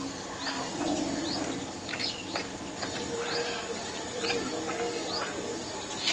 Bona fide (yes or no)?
no